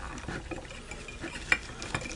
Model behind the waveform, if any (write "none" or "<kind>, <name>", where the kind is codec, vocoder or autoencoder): none